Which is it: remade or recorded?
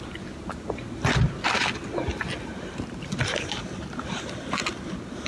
recorded